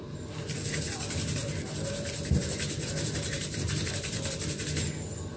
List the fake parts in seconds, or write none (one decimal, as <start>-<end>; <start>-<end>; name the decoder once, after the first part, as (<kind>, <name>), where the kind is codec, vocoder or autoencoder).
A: none